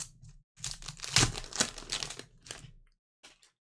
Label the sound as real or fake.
real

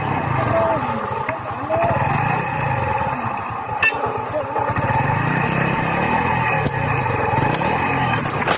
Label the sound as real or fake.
real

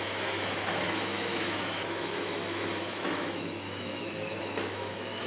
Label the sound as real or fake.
fake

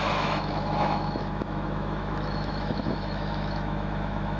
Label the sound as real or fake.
fake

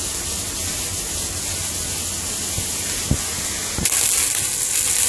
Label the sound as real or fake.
real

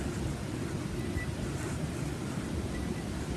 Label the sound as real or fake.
real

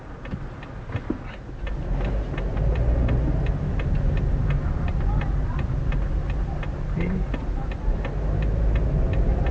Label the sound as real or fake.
real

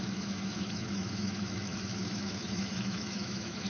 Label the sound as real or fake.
fake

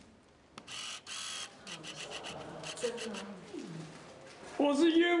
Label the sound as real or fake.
real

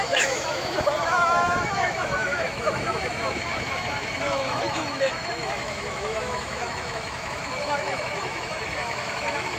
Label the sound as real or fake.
fake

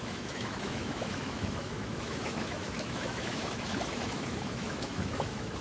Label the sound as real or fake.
fake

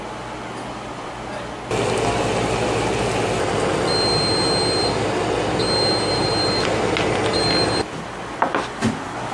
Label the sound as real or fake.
real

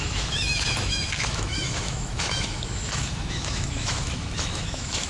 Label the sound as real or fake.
fake